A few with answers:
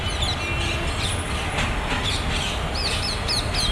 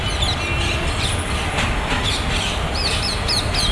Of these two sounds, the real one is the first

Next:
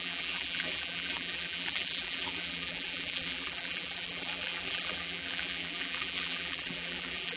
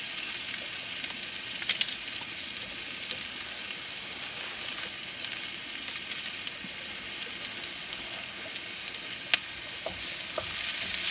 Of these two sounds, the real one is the second